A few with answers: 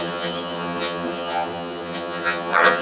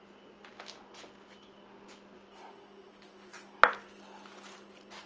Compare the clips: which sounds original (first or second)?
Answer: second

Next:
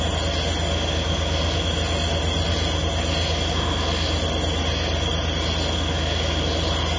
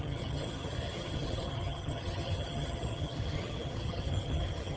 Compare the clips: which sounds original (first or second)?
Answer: first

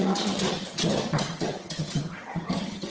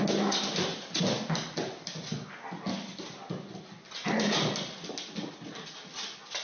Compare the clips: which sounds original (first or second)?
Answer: second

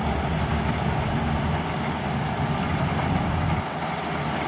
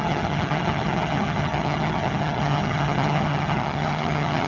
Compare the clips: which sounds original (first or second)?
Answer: first